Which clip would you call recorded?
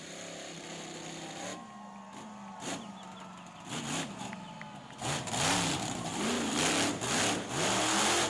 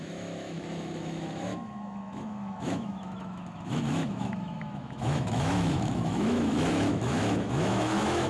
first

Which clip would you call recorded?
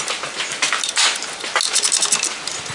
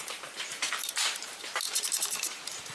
first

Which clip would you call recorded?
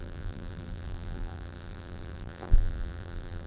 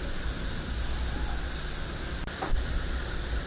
second